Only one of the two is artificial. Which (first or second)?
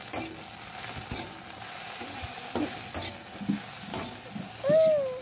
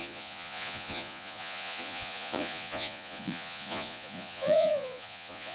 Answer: second